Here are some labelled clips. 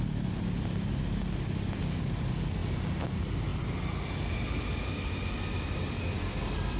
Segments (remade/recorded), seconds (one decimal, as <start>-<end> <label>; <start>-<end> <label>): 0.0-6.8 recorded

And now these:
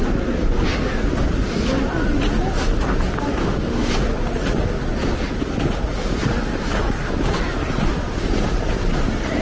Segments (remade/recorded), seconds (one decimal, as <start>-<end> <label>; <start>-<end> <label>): 0.0-3.4 recorded; 3.4-3.9 remade; 3.9-9.4 recorded

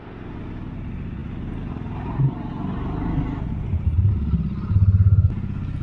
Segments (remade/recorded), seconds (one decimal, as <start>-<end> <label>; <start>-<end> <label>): 0.0-5.8 recorded